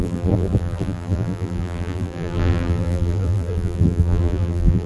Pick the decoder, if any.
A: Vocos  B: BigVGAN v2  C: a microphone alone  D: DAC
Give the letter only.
B